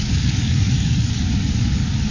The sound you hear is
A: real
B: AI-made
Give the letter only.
B